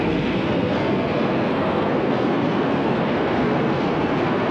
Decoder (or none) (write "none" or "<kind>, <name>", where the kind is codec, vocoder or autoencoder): codec, SNAC